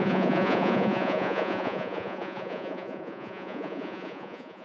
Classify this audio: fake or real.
fake